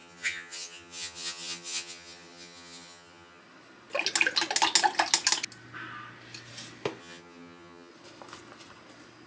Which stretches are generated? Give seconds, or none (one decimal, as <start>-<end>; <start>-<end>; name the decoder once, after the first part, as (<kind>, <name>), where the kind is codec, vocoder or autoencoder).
0.0-3.4 (vocoder, HiFi-GAN); 7.0-7.9